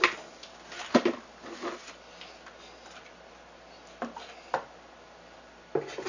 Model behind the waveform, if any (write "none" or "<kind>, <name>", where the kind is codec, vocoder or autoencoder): none